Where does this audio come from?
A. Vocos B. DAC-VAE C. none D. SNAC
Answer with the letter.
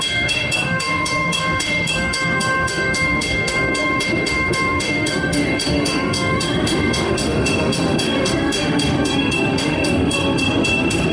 B